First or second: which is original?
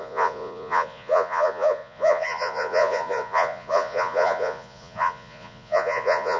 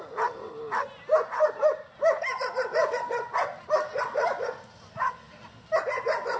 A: second